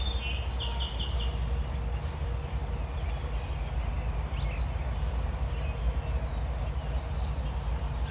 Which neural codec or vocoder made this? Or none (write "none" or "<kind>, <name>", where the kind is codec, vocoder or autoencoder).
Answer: none